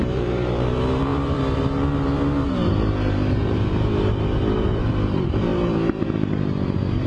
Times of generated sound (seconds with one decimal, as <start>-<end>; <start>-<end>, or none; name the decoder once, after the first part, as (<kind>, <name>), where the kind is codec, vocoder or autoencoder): 0.0-7.1 (vocoder, BigVGAN v2)